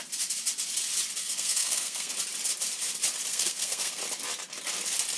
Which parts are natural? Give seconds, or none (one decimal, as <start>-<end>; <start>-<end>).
0.0-1.2; 2.1-3.3; 4.0-5.2